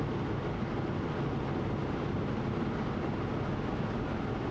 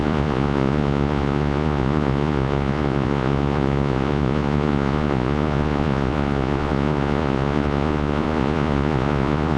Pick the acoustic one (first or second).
first